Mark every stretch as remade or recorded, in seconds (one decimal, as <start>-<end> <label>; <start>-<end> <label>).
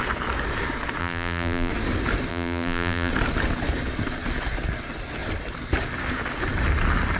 0.0-1.0 recorded; 1.0-1.7 remade; 1.7-2.3 recorded; 2.3-3.1 remade; 3.1-7.2 recorded